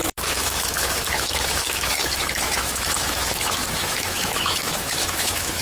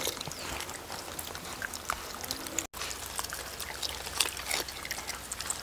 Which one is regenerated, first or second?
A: first